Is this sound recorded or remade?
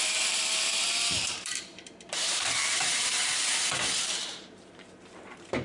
remade